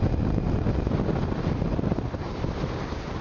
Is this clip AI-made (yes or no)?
no